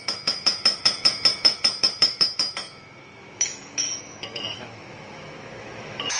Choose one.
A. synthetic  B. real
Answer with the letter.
A